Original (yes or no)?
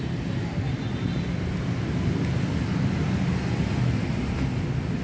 yes